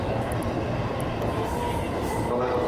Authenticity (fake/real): real